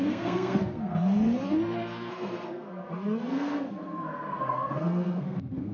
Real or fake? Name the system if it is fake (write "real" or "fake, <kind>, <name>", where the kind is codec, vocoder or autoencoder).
fake, codec, SNAC